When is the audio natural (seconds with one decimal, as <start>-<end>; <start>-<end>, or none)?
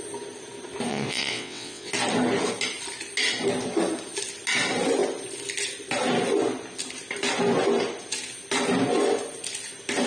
0.0-0.9; 1.9-10.1